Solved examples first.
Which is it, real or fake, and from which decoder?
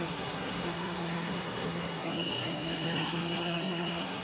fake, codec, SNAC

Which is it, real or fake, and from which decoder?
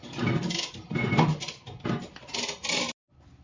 real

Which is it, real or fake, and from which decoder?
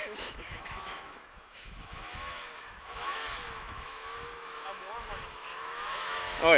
fake, autoencoder, DAC-VAE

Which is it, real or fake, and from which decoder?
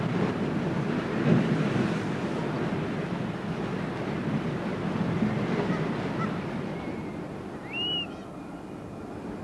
real